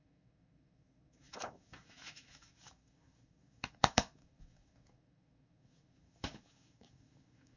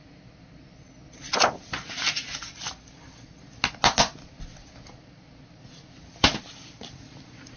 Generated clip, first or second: first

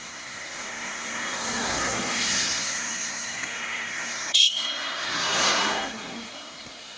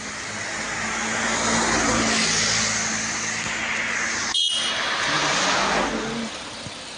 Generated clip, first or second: first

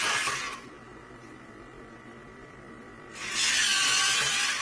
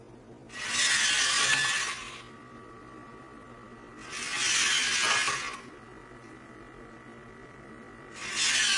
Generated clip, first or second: first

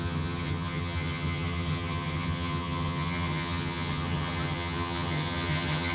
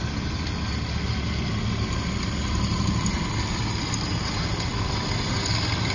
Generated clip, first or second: first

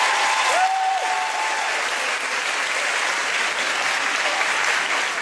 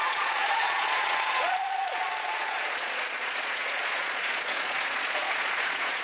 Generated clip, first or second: second